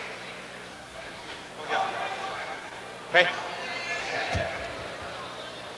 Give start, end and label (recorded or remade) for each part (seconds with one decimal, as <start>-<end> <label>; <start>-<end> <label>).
0.0-0.7 recorded; 0.7-1.5 remade; 1.5-2.3 recorded; 2.3-2.8 remade; 2.8-4.0 recorded; 4.0-4.6 remade; 4.6-5.8 recorded